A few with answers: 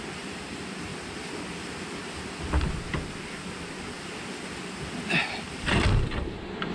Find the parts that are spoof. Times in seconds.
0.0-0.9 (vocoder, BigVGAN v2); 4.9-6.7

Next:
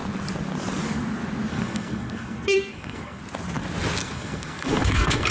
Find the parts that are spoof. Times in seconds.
1.5-3.2 (codec, SNAC); 4.0-5.3

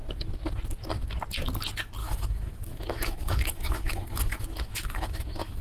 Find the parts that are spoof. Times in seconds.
2.0-5.6 (autoencoder, DAC-VAE)

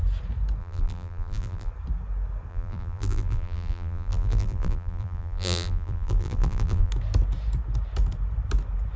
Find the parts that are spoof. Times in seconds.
0.6-1.7 (vocoder, BigVGAN v2); 2.5-6.9